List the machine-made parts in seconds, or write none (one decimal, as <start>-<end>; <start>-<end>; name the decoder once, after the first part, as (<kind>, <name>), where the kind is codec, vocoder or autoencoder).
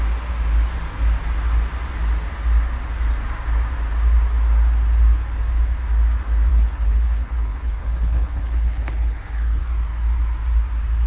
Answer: 6.5-9.6 (codec, HILCodec)